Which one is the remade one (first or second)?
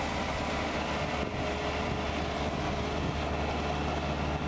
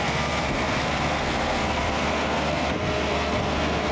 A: second